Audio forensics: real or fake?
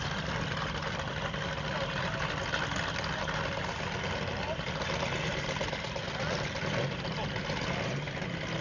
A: real